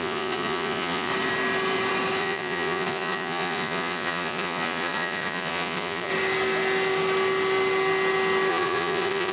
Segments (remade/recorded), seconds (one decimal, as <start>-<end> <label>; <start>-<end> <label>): 0.0-1.1 remade; 1.1-2.2 recorded; 2.2-6.1 remade; 6.1-8.5 recorded; 8.5-9.3 remade